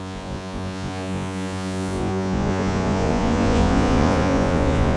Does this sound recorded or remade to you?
remade